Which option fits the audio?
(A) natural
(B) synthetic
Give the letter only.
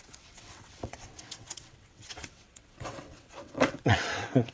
B